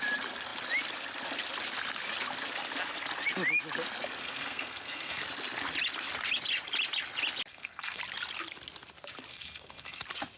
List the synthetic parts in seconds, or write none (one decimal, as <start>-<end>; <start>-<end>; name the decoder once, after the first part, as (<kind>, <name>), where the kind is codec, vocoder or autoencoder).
4.2-5.2 (codec, SNAC); 7.5-8.0; 9.3-10.0

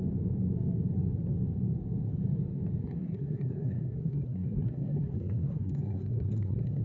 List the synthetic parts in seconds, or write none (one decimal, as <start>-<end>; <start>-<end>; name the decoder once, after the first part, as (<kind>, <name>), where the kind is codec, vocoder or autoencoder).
2.8-6.8 (codec, SNAC)